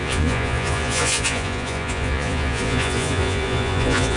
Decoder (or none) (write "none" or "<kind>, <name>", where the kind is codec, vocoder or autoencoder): vocoder, Vocos